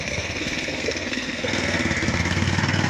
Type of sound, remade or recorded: remade